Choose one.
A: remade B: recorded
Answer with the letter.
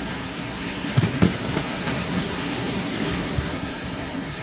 A